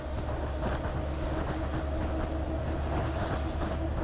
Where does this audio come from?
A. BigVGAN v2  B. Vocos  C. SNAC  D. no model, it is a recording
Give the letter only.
D